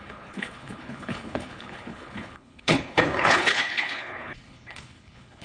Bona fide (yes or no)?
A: no